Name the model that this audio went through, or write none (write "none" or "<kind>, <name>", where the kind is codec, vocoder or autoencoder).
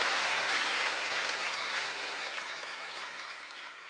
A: codec, SNAC